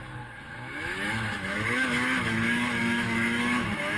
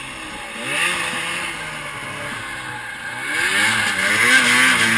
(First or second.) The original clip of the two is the second